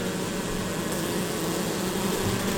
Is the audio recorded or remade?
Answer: recorded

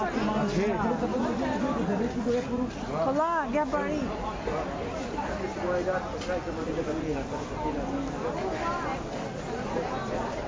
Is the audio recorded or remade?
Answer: recorded